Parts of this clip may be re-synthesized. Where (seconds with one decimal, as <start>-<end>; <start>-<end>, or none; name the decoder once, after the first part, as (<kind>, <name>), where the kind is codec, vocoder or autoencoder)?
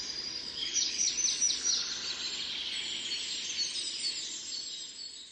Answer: 0.4-1.1 (codec, HILCodec)